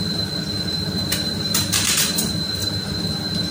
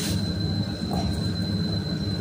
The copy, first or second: first